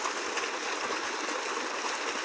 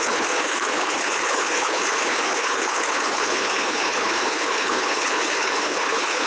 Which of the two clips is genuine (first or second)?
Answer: first